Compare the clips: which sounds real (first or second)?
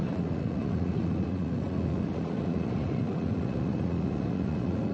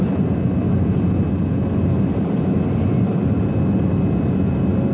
second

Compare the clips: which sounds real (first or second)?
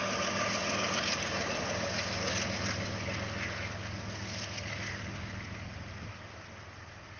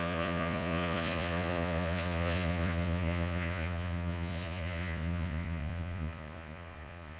first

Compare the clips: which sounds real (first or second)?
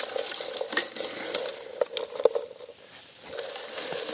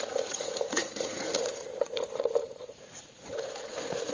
first